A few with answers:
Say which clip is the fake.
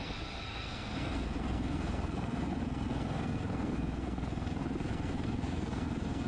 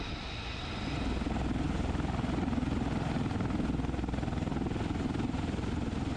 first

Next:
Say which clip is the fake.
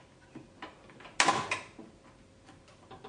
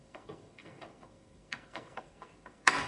second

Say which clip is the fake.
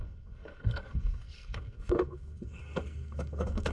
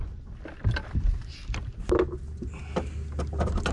first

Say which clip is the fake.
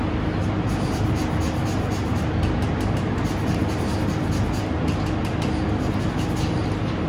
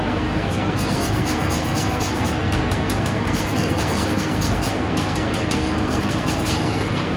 second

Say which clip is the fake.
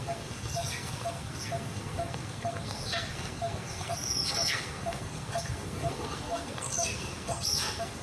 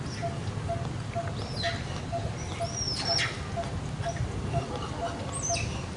first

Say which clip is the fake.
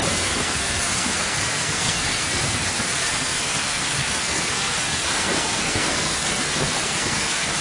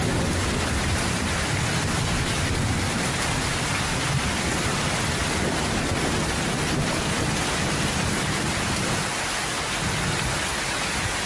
first